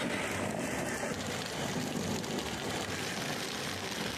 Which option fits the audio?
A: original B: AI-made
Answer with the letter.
A